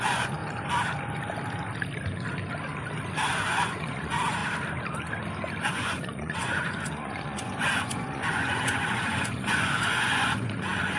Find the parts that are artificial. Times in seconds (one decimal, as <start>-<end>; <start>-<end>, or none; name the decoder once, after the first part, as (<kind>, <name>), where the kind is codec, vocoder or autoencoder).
0.0-0.4 (vocoder, Vocos); 3.3-4.4; 5.6-11.0